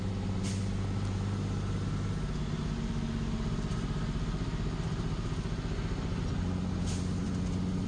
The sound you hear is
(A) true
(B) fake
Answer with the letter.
A